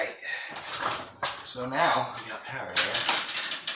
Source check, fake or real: fake